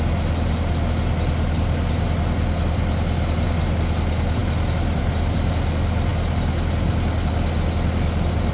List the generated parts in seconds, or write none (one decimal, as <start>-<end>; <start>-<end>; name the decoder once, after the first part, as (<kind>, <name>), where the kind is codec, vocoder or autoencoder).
none